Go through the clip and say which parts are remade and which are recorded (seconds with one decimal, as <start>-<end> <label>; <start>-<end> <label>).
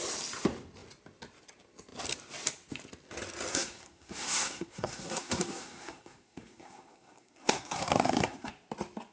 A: 0.0-3.5 recorded; 3.5-8.5 remade; 8.5-9.1 recorded